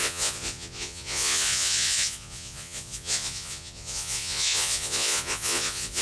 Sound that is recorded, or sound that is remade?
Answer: remade